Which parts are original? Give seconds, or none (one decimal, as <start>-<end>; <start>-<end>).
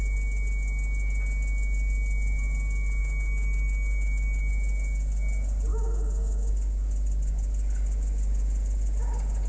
0.0-3.0; 4.5-5.7; 6.5-9.5